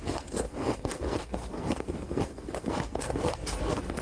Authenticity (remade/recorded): remade